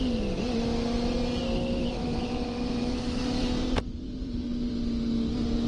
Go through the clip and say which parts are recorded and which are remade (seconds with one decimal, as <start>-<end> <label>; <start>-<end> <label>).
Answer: 0.0-1.8 recorded; 1.8-4.7 remade; 4.7-5.7 recorded